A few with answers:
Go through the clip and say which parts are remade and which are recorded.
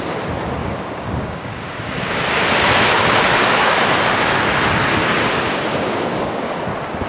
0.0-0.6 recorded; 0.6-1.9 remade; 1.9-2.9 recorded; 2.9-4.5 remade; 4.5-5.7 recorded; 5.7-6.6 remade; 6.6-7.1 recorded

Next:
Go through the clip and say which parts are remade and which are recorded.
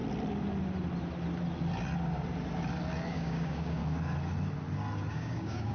0.0-3.1 recorded; 3.1-3.8 remade; 3.8-5.1 recorded; 5.1-5.7 remade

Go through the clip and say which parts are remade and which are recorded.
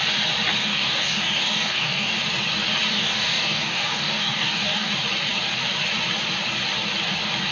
0.0-0.6 recorded; 0.6-2.2 remade; 2.2-2.9 recorded; 2.9-4.9 remade; 4.9-7.5 recorded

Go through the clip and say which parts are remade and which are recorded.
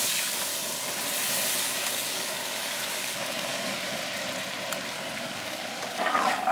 0.0-0.5 remade; 0.5-1.6 recorded; 1.6-4.0 remade; 4.0-4.9 recorded; 4.9-6.5 remade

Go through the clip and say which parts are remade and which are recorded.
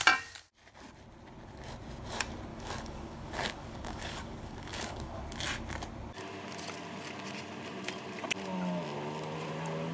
0.0-2.5 recorded; 2.5-5.1 remade; 5.1-9.9 recorded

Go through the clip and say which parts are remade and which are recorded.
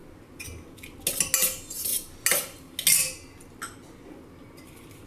0.0-5.1 recorded